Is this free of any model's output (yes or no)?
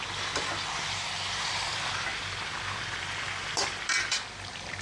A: yes